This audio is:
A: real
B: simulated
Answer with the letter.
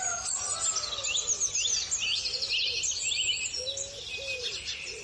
A